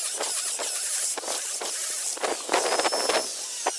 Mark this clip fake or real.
real